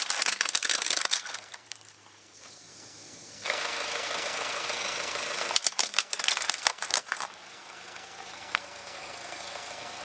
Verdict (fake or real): fake